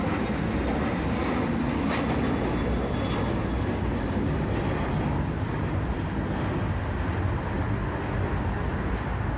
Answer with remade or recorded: recorded